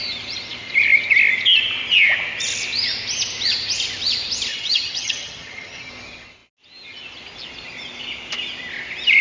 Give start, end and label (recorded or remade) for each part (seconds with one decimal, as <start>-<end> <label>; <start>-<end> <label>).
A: 0.0-4.5 recorded; 4.5-5.9 remade; 5.9-9.2 recorded